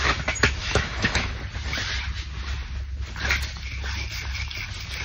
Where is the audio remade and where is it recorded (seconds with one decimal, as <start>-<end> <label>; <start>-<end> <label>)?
0.0-0.6 recorded; 0.6-1.4 remade; 1.4-5.0 recorded